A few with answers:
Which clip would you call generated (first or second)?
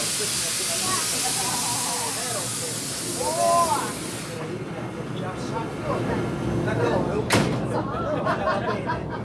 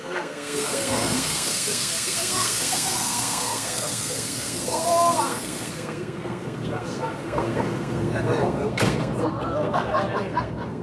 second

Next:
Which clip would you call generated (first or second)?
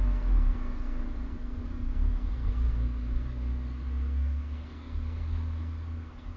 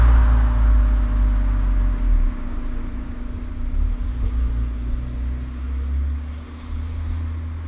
first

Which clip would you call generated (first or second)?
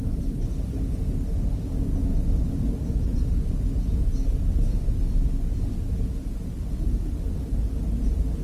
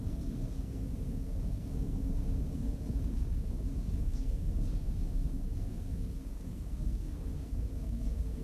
second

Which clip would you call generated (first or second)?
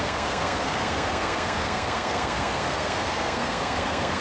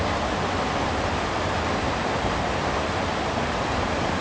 first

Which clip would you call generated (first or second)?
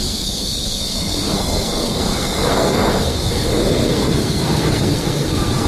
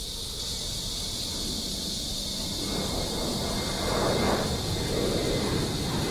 first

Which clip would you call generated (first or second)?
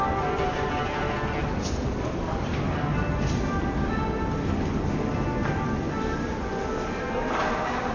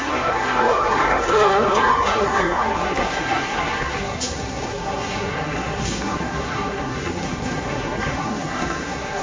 second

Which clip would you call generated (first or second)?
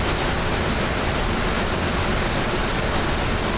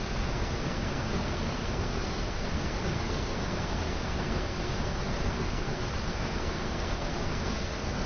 second